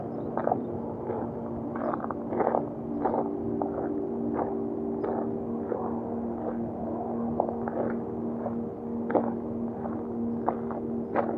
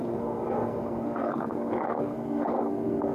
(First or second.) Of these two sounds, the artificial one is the second